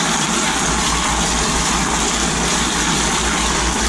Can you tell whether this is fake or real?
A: real